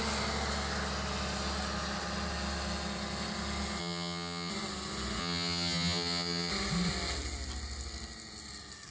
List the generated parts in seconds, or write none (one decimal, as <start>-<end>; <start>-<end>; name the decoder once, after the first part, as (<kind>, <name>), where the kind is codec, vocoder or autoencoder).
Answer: 3.8-4.5 (vocoder, HiFi-GAN); 5.2-6.5